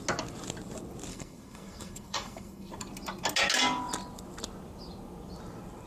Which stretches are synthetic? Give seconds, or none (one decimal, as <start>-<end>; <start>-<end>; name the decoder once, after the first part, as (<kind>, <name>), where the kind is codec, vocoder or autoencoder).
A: 1.1-2.7 (codec, SNAC)